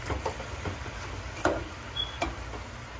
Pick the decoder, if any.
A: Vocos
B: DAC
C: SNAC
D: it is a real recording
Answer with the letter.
D